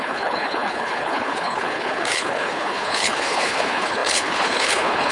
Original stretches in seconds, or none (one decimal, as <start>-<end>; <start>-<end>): none